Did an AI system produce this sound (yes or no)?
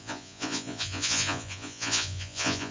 yes